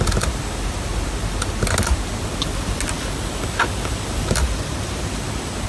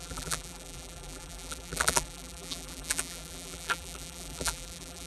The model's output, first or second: second